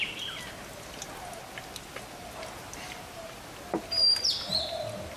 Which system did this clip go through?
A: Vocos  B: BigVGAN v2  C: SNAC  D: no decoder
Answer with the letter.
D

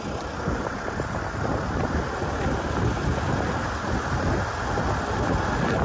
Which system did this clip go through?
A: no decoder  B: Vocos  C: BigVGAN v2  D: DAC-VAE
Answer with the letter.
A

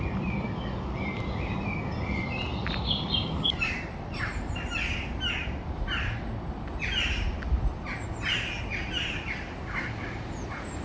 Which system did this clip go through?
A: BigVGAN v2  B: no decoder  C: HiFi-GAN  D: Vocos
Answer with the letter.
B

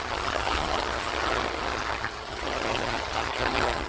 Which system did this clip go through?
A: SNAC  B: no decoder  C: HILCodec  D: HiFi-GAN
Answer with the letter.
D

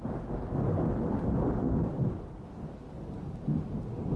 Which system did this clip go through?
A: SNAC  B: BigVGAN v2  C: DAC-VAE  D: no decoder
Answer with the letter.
D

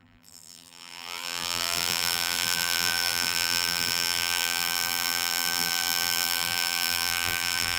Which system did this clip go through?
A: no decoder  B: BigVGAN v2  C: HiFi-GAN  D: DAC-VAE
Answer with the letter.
B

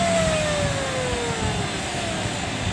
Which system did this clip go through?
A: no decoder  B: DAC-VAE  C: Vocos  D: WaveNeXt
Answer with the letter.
A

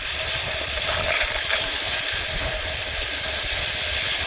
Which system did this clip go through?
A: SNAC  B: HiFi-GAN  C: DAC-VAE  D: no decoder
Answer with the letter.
D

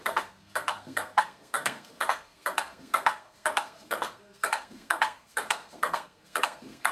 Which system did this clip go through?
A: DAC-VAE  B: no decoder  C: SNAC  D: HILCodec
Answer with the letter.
C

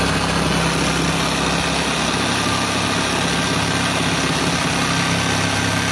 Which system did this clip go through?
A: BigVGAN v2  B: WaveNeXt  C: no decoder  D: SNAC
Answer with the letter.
C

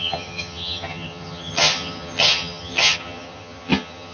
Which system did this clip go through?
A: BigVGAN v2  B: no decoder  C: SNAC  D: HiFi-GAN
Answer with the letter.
D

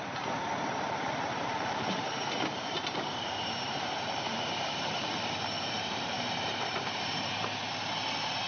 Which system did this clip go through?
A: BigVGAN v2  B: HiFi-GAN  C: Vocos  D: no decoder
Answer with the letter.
A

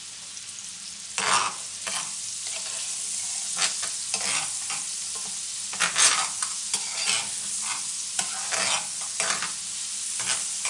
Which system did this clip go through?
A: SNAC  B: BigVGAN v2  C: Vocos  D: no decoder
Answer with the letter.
D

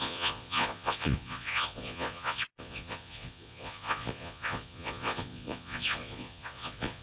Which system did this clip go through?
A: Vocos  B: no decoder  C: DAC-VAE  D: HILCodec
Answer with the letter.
A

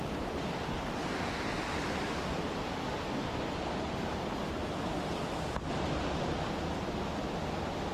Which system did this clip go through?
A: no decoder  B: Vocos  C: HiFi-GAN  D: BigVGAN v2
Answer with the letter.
A